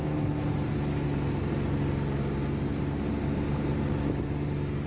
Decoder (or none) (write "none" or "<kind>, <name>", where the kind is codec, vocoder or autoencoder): none